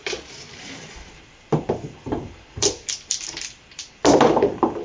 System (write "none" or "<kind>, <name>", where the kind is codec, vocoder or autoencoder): vocoder, BigVGAN v2